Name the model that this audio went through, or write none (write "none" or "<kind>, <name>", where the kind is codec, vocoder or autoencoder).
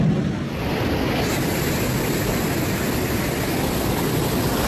none